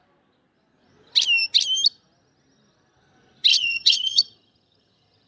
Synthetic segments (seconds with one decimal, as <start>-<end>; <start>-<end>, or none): 3.5-5.3